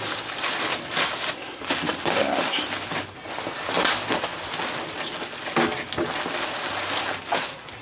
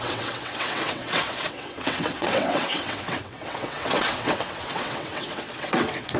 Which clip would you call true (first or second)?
first